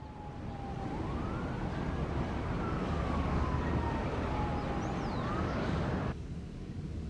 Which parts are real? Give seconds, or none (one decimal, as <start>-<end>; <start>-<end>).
0.0-2.8; 3.7-5.3